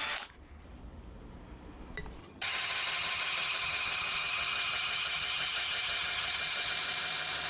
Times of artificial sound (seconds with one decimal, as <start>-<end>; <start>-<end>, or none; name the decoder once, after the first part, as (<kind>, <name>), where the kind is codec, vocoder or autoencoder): 2.2-6.7 (vocoder, HiFi-GAN)